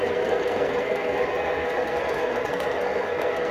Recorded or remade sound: remade